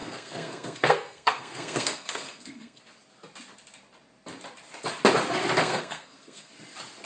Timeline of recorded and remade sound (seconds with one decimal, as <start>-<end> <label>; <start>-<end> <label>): 0.0-2.8 remade; 2.8-5.6 recorded; 5.6-6.5 remade; 6.5-7.1 recorded